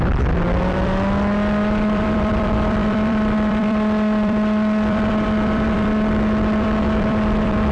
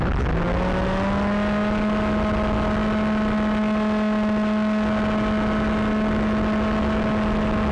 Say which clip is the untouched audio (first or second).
second